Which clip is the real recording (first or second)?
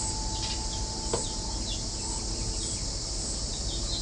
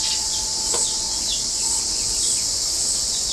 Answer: first